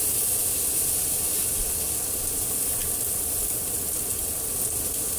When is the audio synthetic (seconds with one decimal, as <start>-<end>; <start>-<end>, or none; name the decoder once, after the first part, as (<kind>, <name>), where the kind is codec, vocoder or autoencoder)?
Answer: none